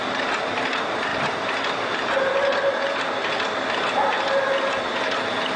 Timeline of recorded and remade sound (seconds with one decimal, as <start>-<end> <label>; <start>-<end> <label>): 0.0-1.1 remade; 1.1-4.5 recorded; 4.5-5.6 remade